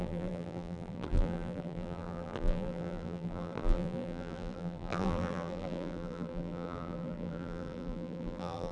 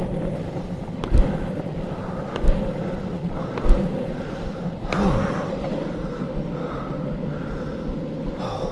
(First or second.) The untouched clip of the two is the second